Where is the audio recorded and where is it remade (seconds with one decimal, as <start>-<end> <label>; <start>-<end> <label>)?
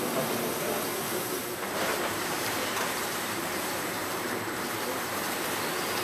0.0-0.9 recorded; 0.9-4.5 remade; 4.5-6.0 recorded